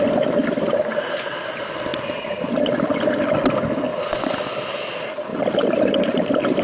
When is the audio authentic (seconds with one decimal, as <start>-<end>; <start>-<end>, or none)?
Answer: 0.0-3.9; 4.4-6.6